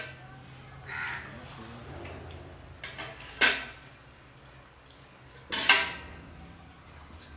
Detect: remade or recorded recorded